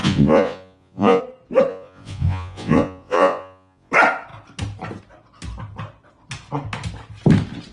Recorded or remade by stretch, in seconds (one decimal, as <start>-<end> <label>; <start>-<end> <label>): 0.0-1.2 remade; 1.2-1.7 recorded; 1.7-3.9 remade; 3.9-7.7 recorded